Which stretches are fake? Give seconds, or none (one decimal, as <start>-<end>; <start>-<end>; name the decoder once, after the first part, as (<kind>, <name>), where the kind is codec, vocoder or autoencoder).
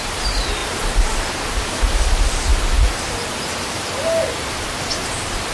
none